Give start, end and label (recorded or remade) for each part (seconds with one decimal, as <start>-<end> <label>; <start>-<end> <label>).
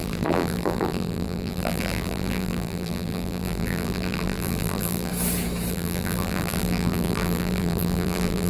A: 0.0-5.1 remade; 5.1-5.7 recorded; 5.7-8.5 remade